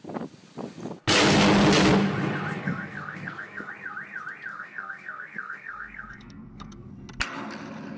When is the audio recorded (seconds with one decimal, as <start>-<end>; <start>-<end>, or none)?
0.0-2.6; 3.7-4.5; 6.9-8.0